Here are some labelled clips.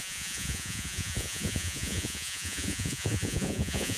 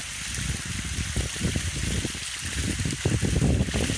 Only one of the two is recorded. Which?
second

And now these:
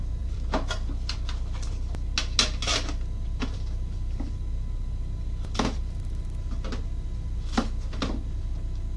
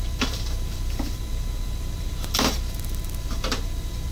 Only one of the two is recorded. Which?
first